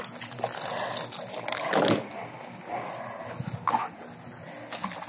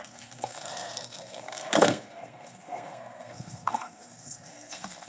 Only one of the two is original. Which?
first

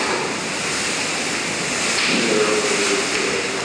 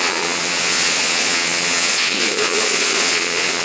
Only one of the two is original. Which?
first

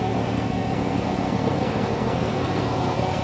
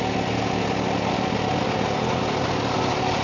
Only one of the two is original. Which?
second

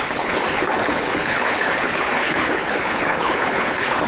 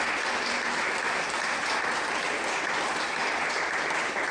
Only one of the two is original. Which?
second